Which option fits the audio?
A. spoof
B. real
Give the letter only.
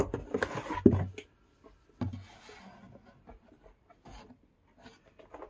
B